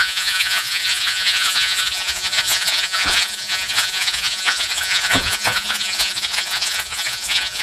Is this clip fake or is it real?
fake